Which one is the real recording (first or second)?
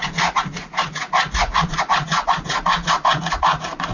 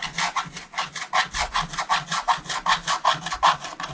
second